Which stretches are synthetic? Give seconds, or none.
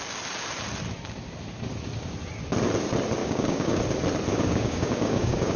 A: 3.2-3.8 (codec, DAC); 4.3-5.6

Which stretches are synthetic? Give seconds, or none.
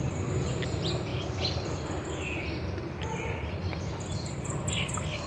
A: none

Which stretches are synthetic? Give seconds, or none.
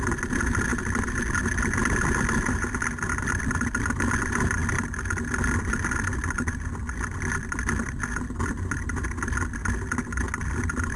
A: none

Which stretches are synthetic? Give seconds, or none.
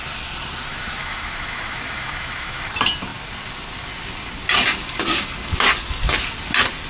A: 0.7-2.7 (autoencoder, DAC-VAE)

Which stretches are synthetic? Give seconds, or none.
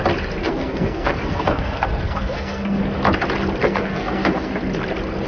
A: 0.4-2.8 (codec, SNAC); 3.6-4.5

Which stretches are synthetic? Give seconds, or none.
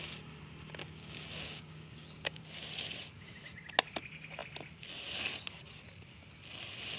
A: 0.8-2.4 (codec, DAC)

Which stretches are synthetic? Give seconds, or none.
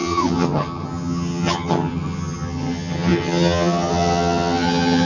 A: 0.0-5.1 (vocoder, HiFi-GAN)